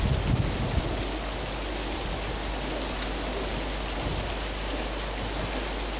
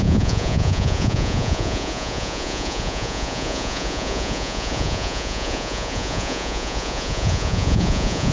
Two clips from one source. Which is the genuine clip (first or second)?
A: first